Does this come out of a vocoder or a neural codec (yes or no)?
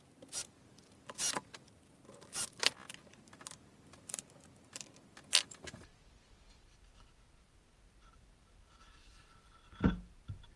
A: no